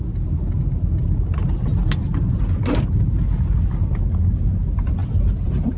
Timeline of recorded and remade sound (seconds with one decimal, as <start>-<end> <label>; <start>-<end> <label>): 0.0-5.0 recorded; 5.0-5.8 remade